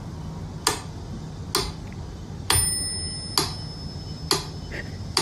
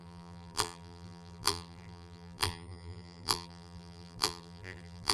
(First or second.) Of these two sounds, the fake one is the second